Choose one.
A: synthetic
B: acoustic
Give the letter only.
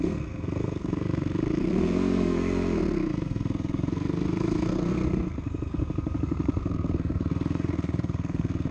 A